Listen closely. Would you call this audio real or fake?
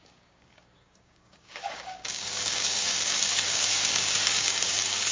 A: fake